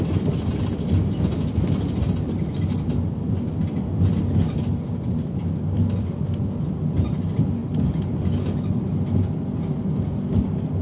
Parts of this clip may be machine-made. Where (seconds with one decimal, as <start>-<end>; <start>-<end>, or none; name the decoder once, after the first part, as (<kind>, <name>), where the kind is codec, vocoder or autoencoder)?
none